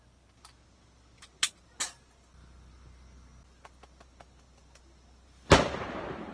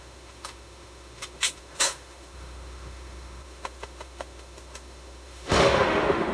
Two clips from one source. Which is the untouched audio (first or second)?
first